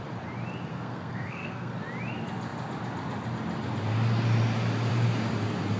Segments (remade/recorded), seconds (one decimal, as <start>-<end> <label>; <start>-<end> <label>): 0.0-0.7 recorded; 0.7-1.8 remade; 1.8-5.8 recorded